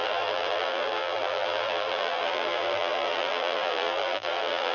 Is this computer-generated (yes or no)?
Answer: yes